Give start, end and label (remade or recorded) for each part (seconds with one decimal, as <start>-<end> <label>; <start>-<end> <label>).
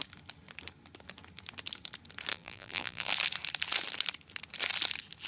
0.0-2.3 recorded; 2.3-3.1 remade; 3.1-5.3 recorded